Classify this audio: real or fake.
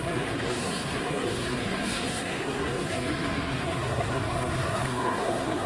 fake